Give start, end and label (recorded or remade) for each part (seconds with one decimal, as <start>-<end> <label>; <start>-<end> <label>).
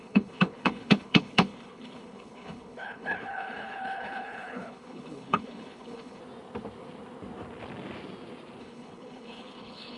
0.0-6.2 remade; 6.2-8.6 recorded; 8.6-10.0 remade